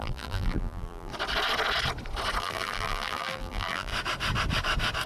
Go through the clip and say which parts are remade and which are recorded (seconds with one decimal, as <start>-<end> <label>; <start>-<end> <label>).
0.0-1.1 remade; 1.1-2.4 recorded; 2.4-3.9 remade; 3.9-5.1 recorded